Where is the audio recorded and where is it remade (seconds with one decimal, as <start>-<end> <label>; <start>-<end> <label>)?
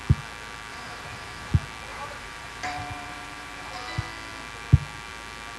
0.0-0.7 recorded; 0.7-1.5 remade; 1.5-1.9 recorded; 1.9-3.7 remade; 3.7-5.6 recorded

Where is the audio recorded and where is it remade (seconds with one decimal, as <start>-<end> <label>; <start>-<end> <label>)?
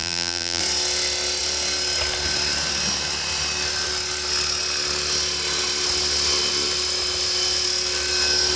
0.0-0.6 remade; 0.6-8.6 recorded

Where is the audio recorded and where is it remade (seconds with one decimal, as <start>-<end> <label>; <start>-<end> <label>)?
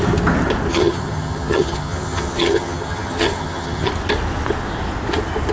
0.0-0.7 recorded; 0.7-3.9 remade; 3.9-5.5 recorded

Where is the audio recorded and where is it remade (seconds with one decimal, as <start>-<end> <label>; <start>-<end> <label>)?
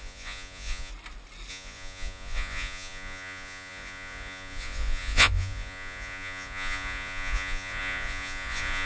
0.0-0.9 remade; 0.9-1.5 recorded; 1.5-8.9 remade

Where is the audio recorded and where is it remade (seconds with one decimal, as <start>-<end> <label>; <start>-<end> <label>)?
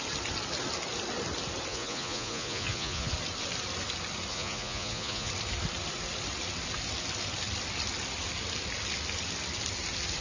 0.0-1.7 recorded; 1.7-3.1 remade; 3.1-4.3 recorded; 4.3-5.3 remade; 5.3-10.2 recorded